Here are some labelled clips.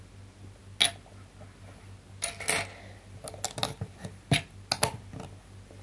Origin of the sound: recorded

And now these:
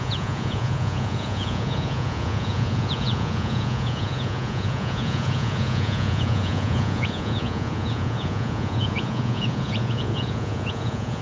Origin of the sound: remade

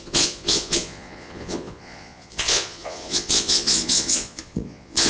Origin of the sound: remade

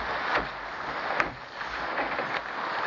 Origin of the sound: recorded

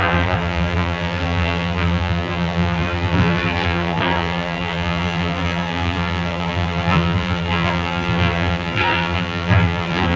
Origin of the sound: remade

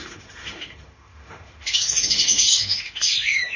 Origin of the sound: remade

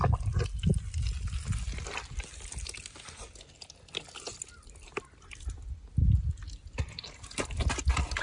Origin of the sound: recorded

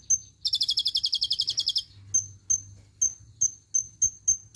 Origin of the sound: recorded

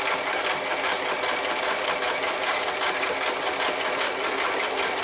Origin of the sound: recorded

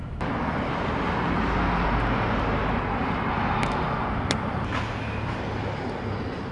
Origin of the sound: recorded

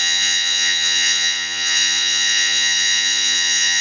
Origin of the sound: remade